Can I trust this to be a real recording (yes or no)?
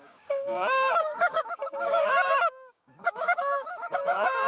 no